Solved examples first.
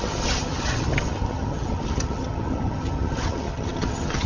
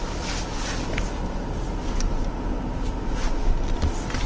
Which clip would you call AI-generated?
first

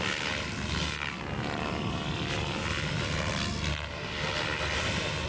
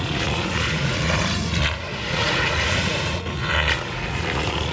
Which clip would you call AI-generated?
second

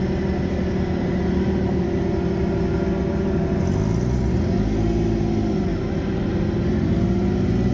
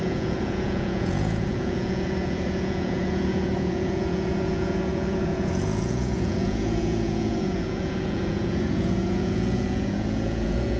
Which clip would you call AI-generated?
second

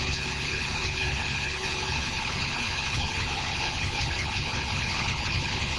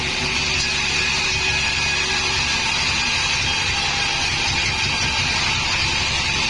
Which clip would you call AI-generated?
first